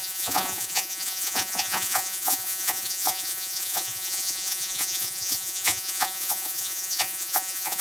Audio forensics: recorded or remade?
remade